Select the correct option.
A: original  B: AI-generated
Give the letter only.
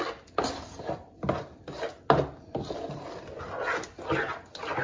A